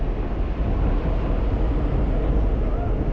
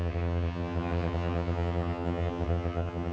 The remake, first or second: second